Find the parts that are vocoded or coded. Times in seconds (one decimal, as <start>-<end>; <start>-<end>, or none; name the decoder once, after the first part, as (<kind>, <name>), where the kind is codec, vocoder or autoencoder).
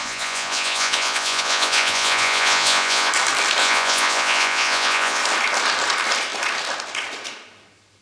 0.0-3.1 (vocoder, Vocos); 3.6-5.2